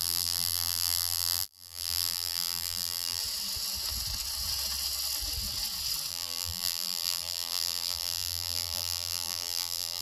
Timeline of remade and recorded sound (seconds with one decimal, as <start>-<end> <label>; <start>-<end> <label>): 0.0-3.2 remade; 3.2-6.1 recorded; 6.1-10.0 remade